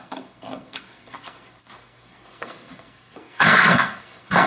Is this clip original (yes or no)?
no